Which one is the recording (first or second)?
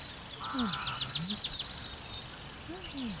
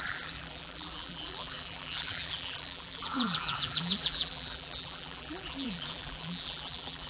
first